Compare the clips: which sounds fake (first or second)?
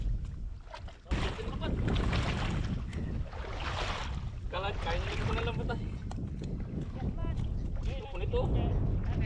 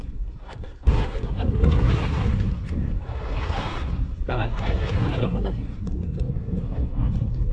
second